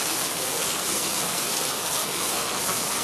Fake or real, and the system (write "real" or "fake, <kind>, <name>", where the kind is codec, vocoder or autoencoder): fake, codec, SNAC